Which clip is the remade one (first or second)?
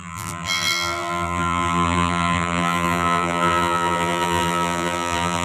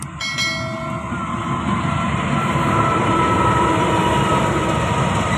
first